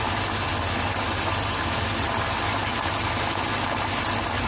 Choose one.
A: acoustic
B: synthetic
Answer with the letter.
A